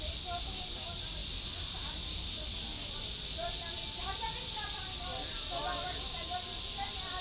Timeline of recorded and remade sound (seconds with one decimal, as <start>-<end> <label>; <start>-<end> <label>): 0.0-2.8 recorded; 2.8-5.6 remade; 5.6-7.2 recorded